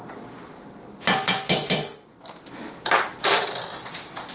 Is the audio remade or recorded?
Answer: recorded